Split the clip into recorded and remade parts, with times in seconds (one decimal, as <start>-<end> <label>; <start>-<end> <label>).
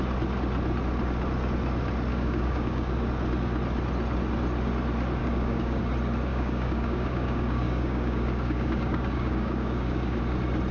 0.0-2.1 recorded; 2.1-3.1 remade; 3.1-5.2 recorded; 5.2-5.8 remade; 5.8-6.3 recorded; 6.3-10.2 remade; 10.2-10.7 recorded